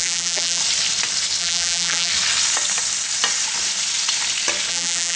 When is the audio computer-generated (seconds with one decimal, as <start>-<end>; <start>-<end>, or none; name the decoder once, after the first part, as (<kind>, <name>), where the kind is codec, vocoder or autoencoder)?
0.0-0.6 (vocoder, BigVGAN v2); 1.4-2.1; 4.7-5.2